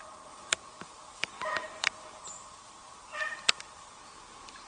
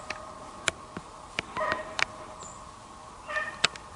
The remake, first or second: first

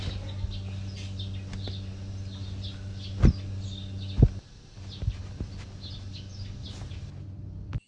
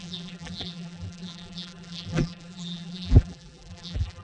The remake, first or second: second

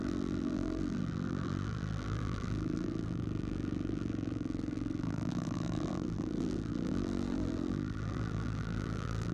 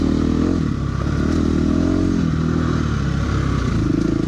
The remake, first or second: first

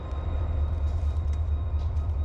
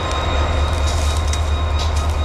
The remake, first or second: first